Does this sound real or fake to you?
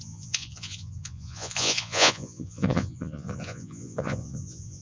fake